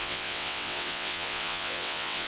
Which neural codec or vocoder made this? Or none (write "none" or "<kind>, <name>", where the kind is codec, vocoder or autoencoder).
vocoder, WaveNeXt